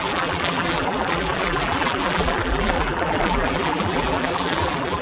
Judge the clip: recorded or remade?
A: remade